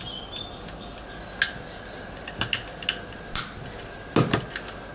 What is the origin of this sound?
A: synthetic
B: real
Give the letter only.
B